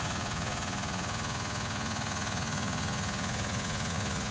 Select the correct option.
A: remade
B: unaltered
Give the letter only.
A